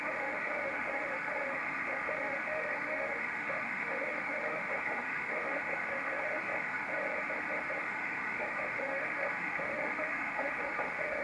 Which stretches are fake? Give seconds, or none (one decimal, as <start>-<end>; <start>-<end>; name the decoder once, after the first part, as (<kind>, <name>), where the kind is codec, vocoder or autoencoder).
0.0-6.9 (autoencoder, DAC-VAE); 7.8-11.2